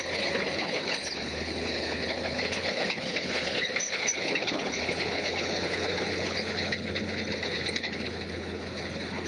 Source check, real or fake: fake